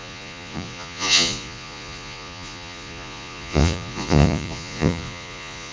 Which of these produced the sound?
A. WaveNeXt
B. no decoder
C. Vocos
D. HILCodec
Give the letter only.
C